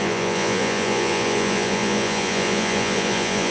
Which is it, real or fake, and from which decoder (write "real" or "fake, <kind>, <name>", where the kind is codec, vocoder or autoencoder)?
fake, vocoder, Vocos